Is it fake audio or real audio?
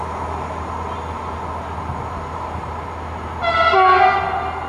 real